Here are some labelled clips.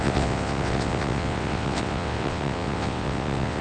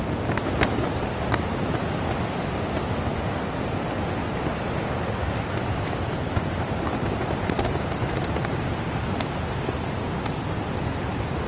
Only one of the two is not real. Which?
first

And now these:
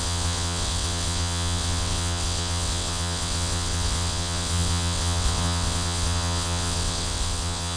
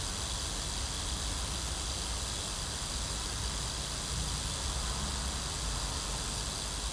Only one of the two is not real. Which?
first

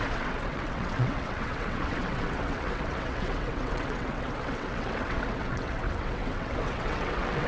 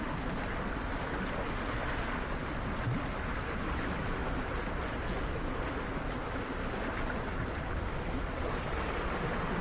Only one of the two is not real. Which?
first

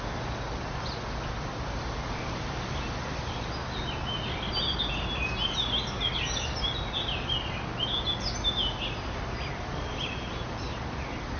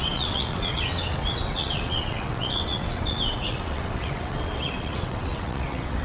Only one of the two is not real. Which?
second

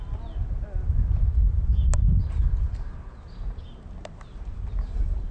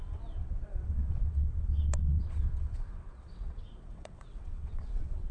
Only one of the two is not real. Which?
second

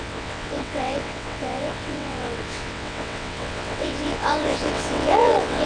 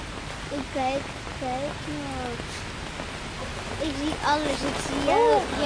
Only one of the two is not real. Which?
first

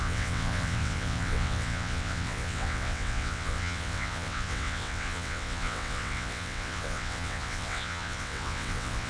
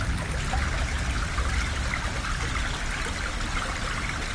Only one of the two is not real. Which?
first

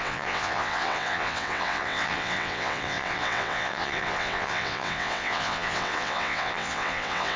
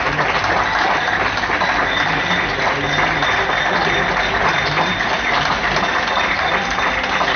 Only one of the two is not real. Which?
first